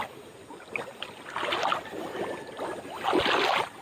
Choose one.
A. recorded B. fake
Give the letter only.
A